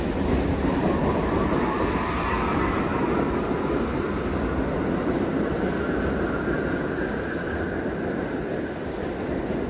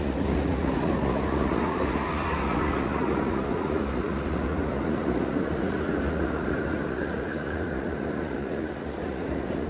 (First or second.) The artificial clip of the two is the second